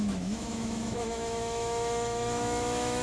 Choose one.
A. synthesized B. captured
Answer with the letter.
A